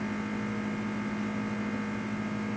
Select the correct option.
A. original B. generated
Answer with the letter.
A